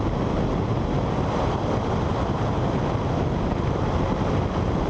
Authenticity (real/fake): real